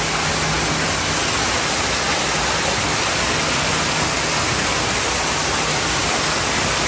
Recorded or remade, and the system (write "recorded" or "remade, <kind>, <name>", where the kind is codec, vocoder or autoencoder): recorded